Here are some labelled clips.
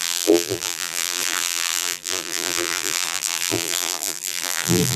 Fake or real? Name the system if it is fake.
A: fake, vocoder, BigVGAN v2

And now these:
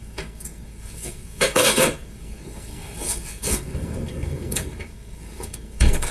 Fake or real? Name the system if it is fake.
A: fake, codec, SNAC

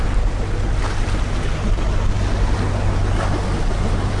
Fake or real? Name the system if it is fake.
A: real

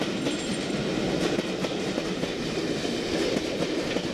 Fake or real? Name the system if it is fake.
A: real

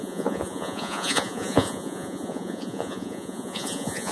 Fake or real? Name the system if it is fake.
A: fake, vocoder, Vocos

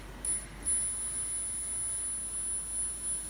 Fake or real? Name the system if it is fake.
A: real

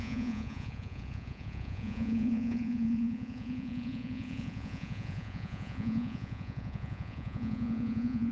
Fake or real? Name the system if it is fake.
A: fake, vocoder, Vocos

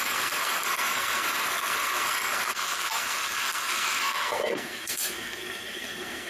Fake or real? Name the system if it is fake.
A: fake, codec, SNAC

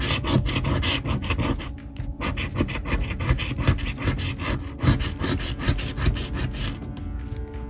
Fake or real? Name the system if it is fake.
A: real